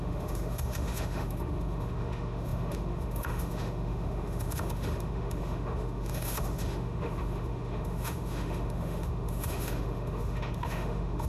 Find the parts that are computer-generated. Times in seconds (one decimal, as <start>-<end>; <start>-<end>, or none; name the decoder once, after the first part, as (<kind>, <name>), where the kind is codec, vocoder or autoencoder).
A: 0.0-11.3 (autoencoder, DAC-VAE)